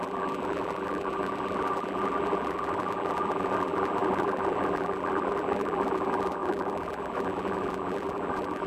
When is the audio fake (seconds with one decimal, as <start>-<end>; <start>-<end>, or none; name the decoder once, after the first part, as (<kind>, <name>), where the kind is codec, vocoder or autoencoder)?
0.0-8.7 (vocoder, BigVGAN v2)

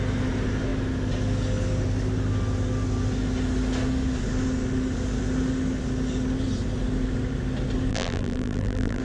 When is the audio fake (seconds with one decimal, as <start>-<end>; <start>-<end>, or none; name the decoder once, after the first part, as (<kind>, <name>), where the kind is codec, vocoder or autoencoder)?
7.9-9.0 (vocoder, BigVGAN v2)

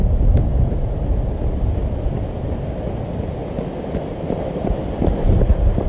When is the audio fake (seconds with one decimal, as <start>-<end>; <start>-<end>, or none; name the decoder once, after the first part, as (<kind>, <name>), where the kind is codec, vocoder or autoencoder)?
0.0-1.8 (vocoder, BigVGAN v2); 2.9-3.4; 4.1-5.9